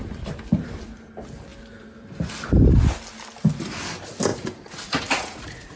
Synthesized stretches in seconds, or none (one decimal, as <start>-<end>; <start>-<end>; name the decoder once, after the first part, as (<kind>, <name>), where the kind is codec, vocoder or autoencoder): 4.3-5.8 (vocoder, Vocos)